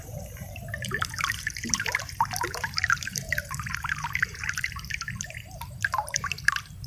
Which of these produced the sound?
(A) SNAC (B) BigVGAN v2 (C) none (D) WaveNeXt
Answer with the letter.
B